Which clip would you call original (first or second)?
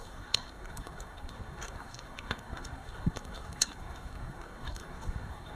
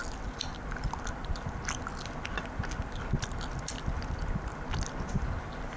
second